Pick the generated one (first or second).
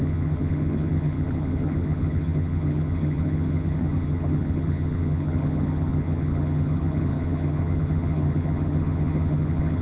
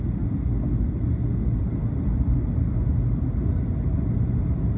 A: first